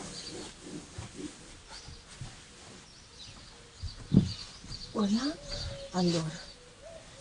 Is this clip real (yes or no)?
yes